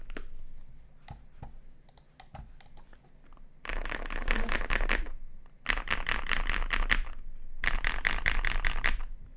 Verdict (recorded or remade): recorded